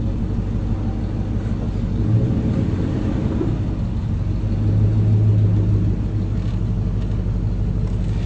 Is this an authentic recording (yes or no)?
yes